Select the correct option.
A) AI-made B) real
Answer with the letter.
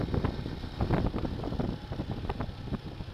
B